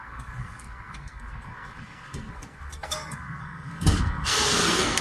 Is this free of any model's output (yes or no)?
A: no